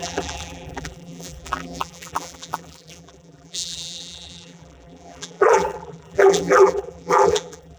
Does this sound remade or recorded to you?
remade